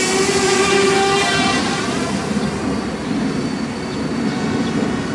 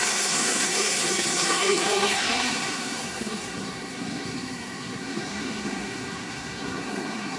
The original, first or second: first